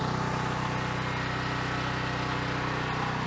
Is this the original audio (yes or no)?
yes